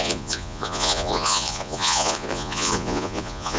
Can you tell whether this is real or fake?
fake